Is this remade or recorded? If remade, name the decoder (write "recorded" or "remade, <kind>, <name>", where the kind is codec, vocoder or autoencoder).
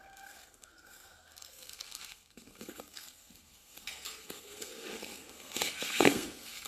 remade, codec, SNAC